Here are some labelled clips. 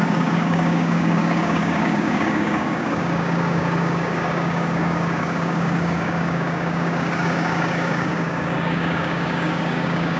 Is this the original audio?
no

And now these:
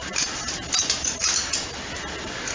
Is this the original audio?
yes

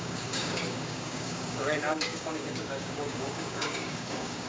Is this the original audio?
no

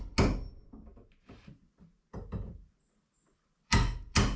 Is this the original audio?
yes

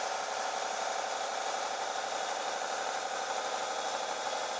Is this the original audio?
yes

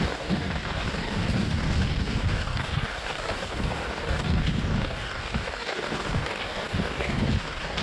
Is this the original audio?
no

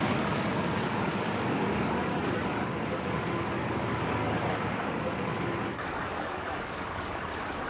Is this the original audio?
no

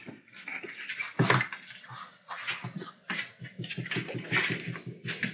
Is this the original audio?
yes